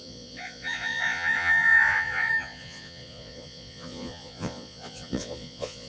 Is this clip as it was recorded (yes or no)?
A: no